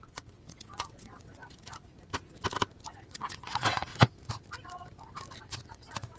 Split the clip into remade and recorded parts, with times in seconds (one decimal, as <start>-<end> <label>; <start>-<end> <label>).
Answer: 0.0-1.4 remade; 1.4-3.0 recorded; 3.0-3.9 remade; 3.9-5.4 recorded; 5.4-6.2 remade